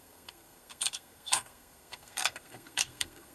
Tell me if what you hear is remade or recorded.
remade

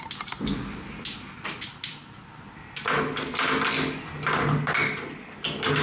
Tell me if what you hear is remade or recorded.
recorded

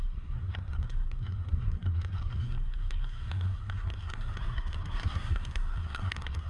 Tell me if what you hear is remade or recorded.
remade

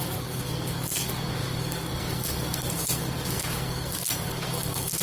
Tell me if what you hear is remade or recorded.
remade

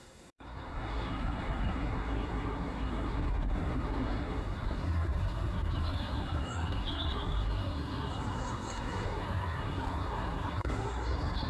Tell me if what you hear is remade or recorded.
remade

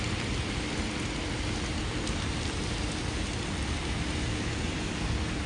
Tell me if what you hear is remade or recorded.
recorded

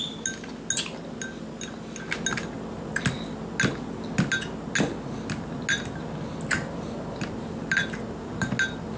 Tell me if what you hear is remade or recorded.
recorded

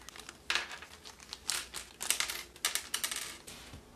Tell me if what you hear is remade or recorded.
recorded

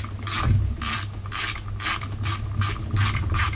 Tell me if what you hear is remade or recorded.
recorded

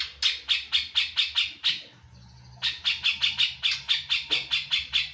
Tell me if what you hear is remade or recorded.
recorded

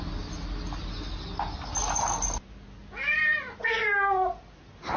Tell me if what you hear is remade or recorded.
recorded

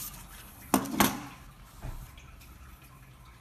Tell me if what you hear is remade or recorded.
recorded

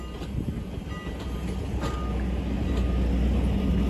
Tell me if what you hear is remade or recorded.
recorded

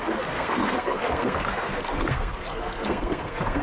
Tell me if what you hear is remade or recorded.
remade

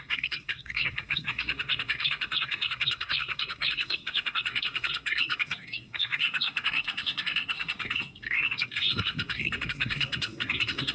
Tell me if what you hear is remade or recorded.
remade